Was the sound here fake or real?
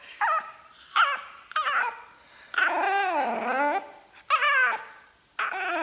real